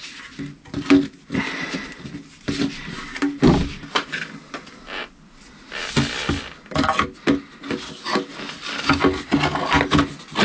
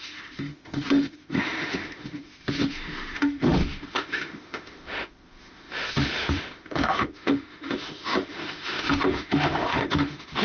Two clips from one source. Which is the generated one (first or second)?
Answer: second